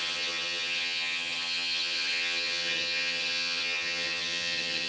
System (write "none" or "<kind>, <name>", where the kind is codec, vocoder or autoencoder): vocoder, HiFi-GAN